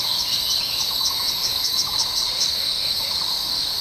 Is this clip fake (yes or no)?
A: yes